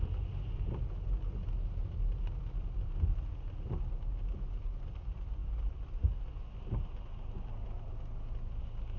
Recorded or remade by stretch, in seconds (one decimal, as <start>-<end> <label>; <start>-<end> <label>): 0.0-9.0 recorded